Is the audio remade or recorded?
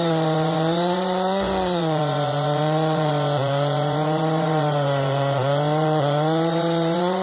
remade